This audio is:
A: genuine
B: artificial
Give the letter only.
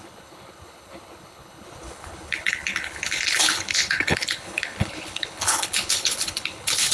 B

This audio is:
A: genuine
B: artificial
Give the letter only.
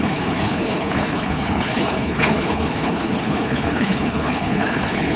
B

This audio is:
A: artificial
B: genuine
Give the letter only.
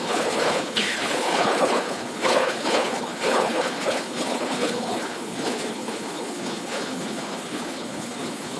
A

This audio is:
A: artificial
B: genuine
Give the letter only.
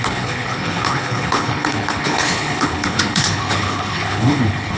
A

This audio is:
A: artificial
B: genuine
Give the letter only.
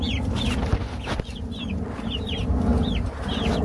B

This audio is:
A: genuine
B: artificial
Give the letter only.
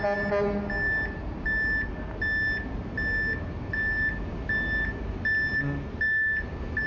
A